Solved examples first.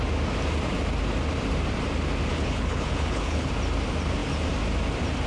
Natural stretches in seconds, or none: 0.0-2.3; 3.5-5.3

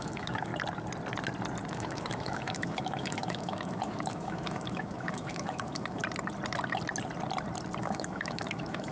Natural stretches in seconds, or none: 0.5-1.7; 6.0-7.8

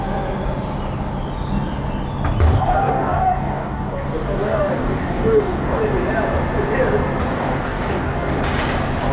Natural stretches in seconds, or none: 0.0-2.5; 5.8-7.3; 8.4-9.1

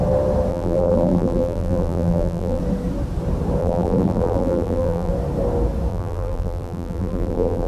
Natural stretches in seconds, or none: 0.0-0.5; 2.6-3.6; 5.1-5.9

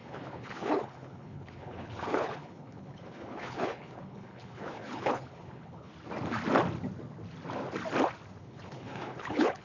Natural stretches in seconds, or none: 5.9-8.4